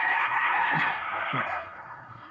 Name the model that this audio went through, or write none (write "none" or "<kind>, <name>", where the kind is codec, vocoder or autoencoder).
codec, SNAC